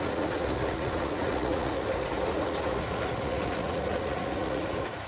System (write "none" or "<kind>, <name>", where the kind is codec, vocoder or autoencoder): vocoder, Vocos